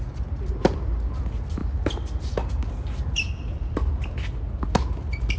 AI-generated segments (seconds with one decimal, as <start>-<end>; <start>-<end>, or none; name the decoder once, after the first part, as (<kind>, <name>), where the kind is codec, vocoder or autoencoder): none